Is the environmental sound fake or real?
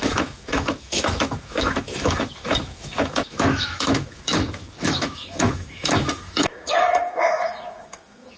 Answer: fake